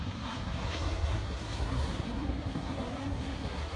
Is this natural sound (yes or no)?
no